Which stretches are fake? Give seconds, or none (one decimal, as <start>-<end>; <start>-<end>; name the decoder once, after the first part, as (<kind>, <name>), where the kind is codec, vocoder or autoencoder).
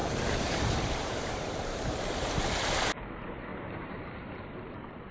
0.0-2.1 (vocoder, BigVGAN v2); 3.5-5.1